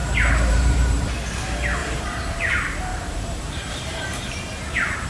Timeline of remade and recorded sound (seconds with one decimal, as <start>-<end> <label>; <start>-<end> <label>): 0.0-1.1 remade; 1.1-1.8 recorded; 1.8-2.5 remade; 2.5-2.9 recorded; 2.9-4.0 remade; 4.0-5.1 recorded